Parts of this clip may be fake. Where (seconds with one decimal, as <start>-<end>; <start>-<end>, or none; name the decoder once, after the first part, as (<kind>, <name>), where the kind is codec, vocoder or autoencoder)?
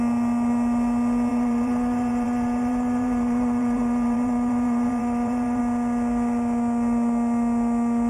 1.3-5.6 (vocoder, BigVGAN v2)